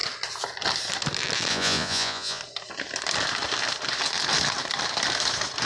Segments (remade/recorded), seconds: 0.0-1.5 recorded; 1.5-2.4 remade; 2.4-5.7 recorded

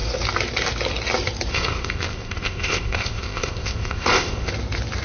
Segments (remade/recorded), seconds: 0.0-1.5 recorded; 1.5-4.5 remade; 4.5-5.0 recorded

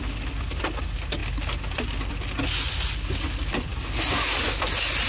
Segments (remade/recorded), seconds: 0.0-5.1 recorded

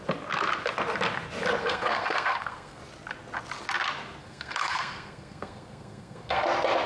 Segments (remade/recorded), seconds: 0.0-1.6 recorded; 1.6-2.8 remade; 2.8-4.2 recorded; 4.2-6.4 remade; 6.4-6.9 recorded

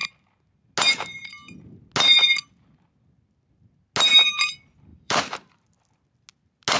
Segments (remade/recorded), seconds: 0.0-4.9 recorded; 4.9-5.9 remade; 5.9-6.8 recorded

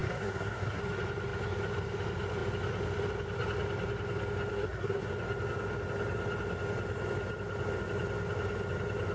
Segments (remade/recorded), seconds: 0.0-0.8 remade; 0.8-4.5 recorded; 4.5-5.1 remade; 5.1-9.1 recorded

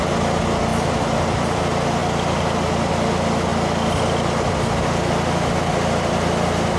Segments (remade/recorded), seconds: 0.0-0.7 recorded; 0.7-1.6 remade; 1.6-2.0 recorded; 2.0-2.9 remade; 2.9-6.8 recorded